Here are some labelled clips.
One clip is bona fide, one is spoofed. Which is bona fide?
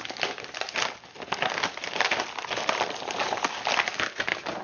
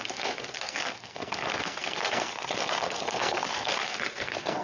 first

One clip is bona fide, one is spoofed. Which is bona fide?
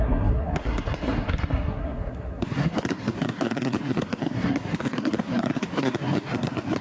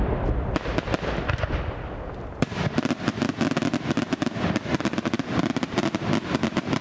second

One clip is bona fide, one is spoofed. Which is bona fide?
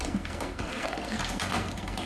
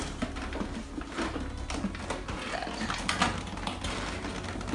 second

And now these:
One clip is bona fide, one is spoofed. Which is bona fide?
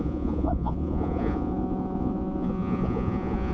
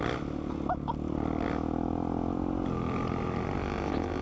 second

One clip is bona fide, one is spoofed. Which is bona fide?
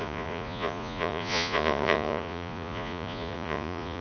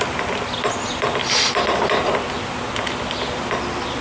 second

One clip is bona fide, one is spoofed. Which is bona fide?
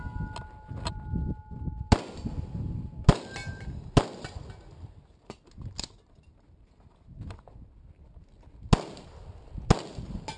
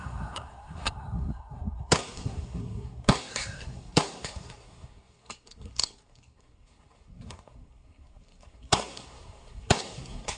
first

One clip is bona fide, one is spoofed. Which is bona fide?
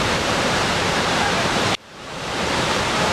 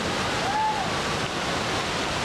second